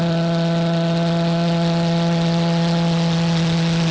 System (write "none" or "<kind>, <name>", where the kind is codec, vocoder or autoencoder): none